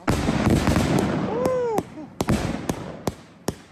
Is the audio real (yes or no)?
yes